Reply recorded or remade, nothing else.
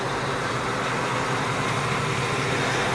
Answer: recorded